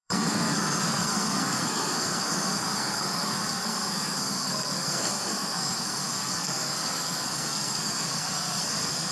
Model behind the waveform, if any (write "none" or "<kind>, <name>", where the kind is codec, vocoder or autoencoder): codec, SNAC